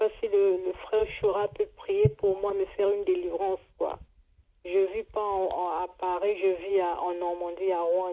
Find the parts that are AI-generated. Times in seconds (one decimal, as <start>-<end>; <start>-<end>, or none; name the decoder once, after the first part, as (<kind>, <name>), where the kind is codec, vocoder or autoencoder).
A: 1.0-2.7 (codec, DAC)